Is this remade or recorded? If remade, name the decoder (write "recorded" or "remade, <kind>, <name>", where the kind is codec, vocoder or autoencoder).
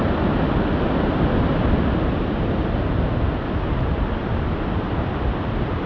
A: recorded